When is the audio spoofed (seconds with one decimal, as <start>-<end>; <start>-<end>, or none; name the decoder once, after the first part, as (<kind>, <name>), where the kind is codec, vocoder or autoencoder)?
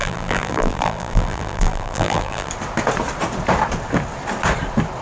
0.0-2.5 (vocoder, BigVGAN v2)